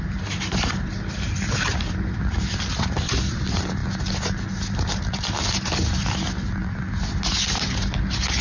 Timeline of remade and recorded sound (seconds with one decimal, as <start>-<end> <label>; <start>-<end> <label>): 0.0-3.8 remade; 3.8-8.4 recorded